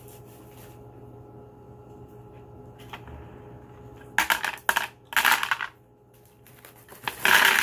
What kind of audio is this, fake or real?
real